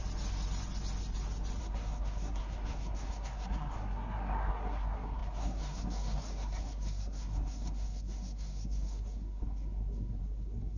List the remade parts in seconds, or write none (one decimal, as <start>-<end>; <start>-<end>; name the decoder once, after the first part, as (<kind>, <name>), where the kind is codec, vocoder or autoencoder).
1.6-10.8 (codec, SNAC)